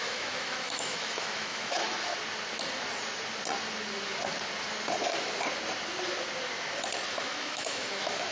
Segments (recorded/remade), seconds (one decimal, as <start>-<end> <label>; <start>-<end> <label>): 0.0-2.1 remade; 2.1-7.1 recorded; 7.1-8.3 remade

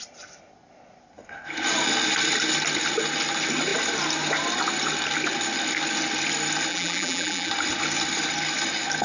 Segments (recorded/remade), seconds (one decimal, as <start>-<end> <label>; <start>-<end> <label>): 0.0-6.7 recorded; 6.7-7.5 remade; 7.5-9.0 recorded

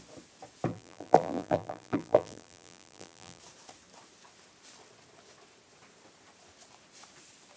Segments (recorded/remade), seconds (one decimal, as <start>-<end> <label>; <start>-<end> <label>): 0.0-0.7 recorded; 0.7-3.4 remade; 3.4-7.6 recorded

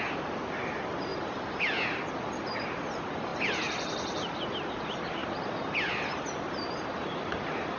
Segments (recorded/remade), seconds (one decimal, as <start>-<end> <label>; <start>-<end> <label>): 0.0-7.8 recorded

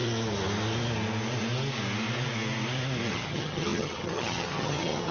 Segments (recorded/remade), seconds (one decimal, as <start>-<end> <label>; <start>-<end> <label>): 0.0-3.1 recorded; 3.1-5.1 remade

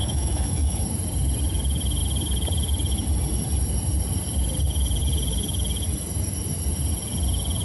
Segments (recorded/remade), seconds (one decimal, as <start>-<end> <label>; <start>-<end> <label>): 0.0-0.8 remade; 0.8-7.6 recorded